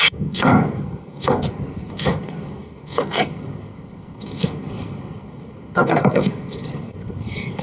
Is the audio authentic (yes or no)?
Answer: no